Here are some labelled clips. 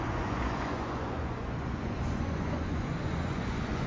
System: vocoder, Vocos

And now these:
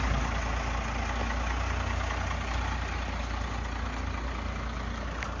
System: none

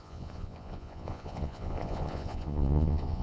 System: vocoder, Vocos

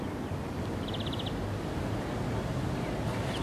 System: none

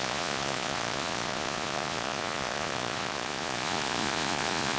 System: vocoder, Vocos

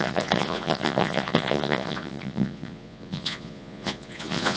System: vocoder, Vocos